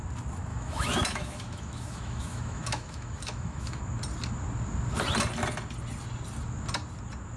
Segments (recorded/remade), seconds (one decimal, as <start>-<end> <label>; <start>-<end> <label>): 0.0-0.5 recorded; 0.5-3.8 remade; 3.8-7.4 recorded